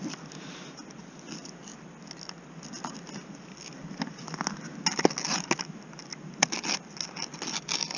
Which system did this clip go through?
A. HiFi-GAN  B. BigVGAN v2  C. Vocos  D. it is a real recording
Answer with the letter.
D